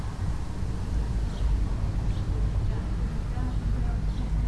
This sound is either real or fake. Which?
real